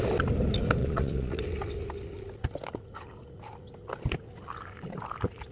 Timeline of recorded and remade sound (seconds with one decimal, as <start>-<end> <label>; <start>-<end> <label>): 0.0-0.8 recorded; 0.8-1.4 remade; 1.4-5.5 recorded